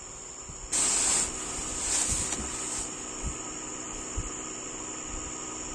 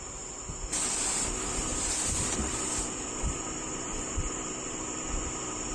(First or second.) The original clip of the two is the first